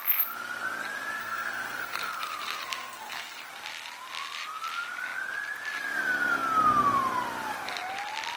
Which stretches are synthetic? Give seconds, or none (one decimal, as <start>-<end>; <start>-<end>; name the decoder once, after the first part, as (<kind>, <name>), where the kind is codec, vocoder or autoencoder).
1.2-3.5 (codec, SNAC)